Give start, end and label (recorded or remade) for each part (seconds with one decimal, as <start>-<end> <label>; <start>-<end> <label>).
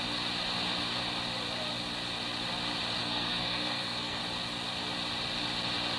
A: 0.0-3.0 recorded; 3.0-4.2 remade; 4.2-6.0 recorded